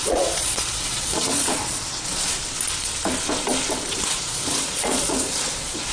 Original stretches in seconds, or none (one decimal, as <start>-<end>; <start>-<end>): 2.4-3.9